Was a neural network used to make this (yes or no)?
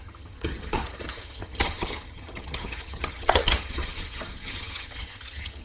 yes